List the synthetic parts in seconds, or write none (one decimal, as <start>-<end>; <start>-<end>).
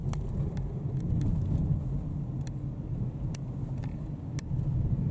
none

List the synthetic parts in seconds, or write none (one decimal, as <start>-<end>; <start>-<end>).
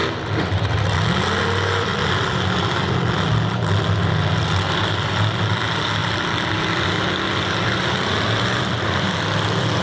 1.4-1.9; 4.8-9.8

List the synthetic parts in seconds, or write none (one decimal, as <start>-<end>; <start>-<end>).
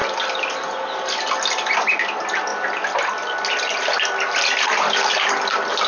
0.0-1.2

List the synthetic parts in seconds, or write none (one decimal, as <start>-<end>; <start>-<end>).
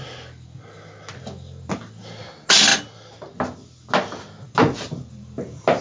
none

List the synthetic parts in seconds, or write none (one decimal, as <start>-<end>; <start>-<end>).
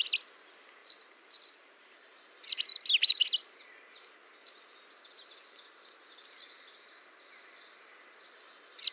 0.8-2.3